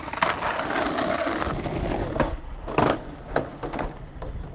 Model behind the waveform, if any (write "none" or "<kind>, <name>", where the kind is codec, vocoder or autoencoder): none